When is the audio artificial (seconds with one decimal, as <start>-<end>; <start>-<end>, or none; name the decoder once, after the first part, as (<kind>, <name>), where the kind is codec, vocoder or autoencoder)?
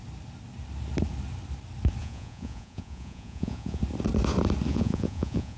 2.0-3.8 (vocoder, Vocos); 4.7-5.6